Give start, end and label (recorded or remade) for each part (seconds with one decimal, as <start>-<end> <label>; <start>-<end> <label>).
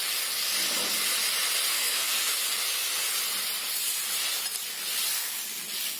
0.0-1.7 recorded; 1.7-2.3 remade; 2.3-6.0 recorded